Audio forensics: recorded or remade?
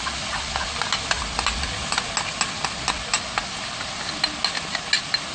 recorded